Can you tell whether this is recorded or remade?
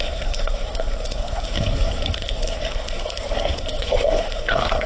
remade